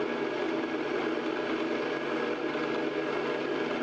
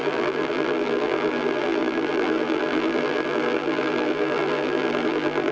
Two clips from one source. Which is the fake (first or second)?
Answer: second